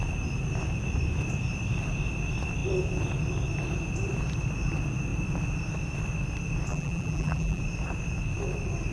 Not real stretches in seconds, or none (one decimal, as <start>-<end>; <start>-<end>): 6.7-7.6